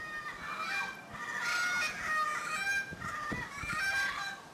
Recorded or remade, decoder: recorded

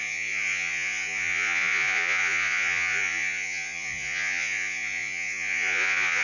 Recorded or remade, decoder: remade, vocoder, Vocos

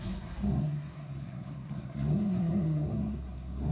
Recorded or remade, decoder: remade, codec, SNAC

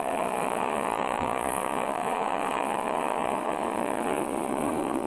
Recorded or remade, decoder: remade, vocoder, Vocos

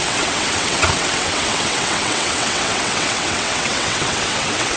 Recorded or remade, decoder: remade, vocoder, WaveNeXt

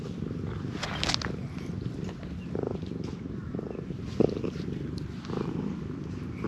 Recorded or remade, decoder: recorded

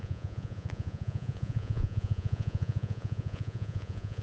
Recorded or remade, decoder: remade, vocoder, Vocos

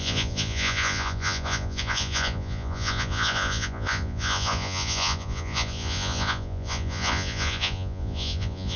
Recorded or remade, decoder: remade, vocoder, Vocos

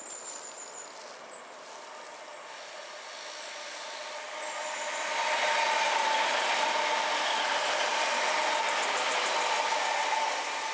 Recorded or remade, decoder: recorded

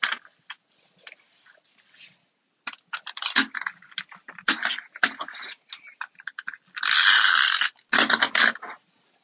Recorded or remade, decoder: recorded